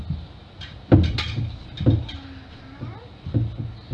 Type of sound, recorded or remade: recorded